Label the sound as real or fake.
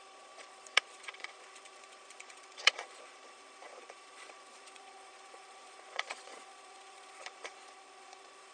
fake